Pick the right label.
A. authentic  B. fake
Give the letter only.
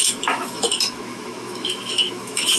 B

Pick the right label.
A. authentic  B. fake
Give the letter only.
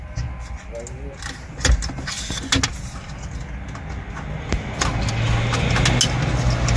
A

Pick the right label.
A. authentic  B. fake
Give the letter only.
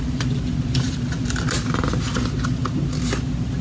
A